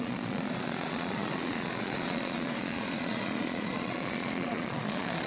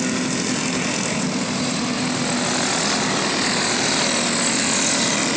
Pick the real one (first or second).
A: second